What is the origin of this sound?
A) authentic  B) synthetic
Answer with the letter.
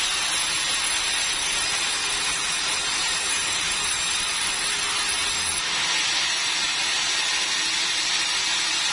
A